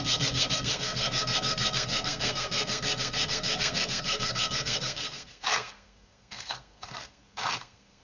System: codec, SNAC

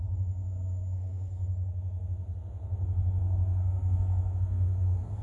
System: codec, SNAC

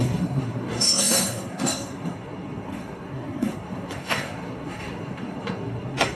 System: codec, SNAC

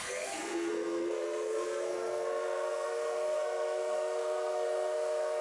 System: codec, SNAC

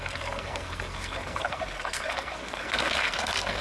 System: codec, SNAC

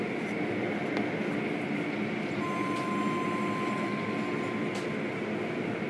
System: none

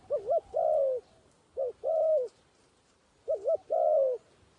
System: none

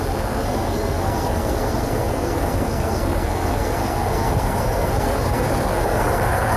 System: codec, SNAC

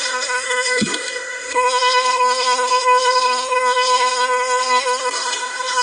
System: codec, SNAC